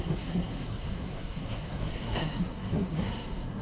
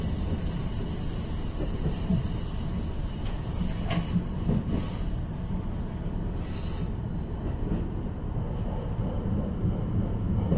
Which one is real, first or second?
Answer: second